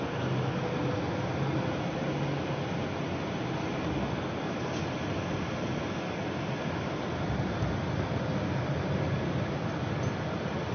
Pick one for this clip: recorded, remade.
recorded